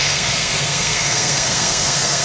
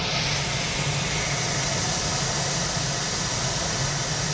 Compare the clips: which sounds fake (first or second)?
first